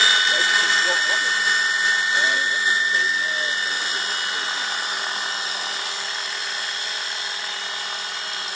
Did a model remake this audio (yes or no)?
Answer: no